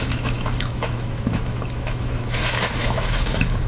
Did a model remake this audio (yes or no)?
yes